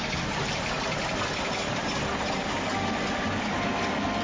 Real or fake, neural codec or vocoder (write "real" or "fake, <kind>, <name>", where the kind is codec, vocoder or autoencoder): real